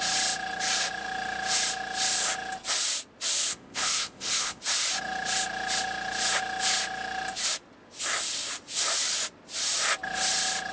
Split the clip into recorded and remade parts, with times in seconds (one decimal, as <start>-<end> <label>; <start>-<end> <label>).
0.0-3.5 recorded; 3.5-4.6 remade; 4.6-10.7 recorded